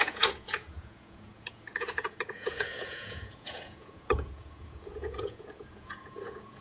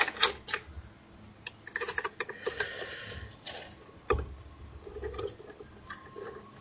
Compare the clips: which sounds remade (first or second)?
first